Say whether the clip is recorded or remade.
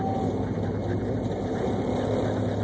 recorded